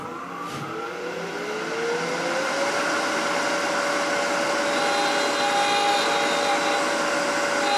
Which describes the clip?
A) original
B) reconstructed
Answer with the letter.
A